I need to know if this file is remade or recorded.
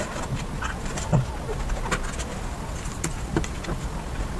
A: recorded